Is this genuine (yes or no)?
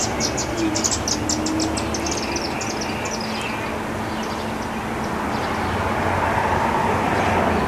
yes